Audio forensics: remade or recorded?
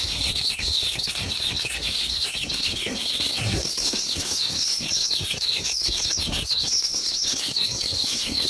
remade